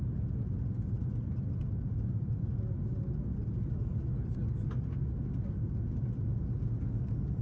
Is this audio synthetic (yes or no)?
no